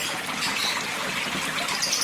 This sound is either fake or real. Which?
fake